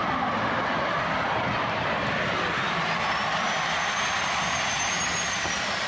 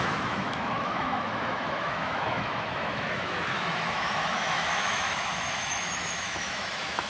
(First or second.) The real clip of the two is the first